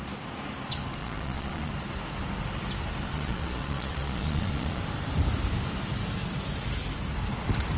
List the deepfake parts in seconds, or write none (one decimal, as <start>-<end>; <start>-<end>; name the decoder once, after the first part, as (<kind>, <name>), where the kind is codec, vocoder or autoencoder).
1.0-1.7 (vocoder, Vocos); 3.1-4.8